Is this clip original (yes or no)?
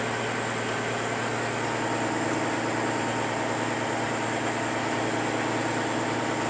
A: yes